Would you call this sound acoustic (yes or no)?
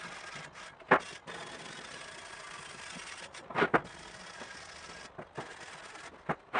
yes